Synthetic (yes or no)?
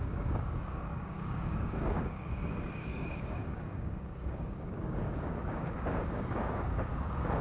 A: yes